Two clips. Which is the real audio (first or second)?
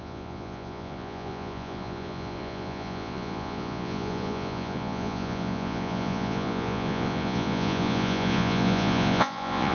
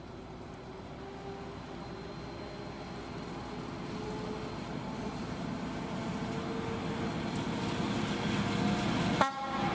second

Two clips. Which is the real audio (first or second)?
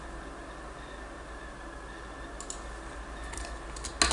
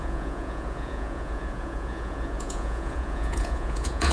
first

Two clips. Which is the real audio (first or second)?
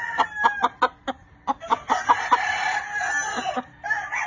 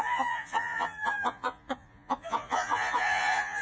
first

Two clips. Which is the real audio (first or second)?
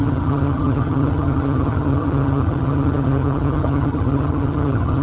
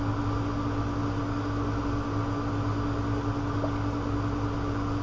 second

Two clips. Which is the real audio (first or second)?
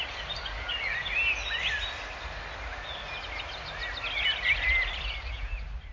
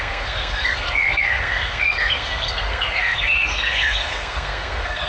first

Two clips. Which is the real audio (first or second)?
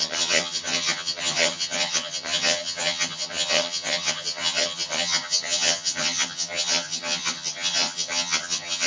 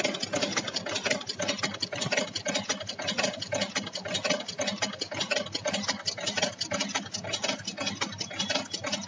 second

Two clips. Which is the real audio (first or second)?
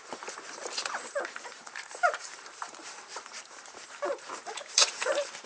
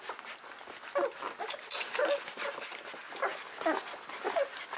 second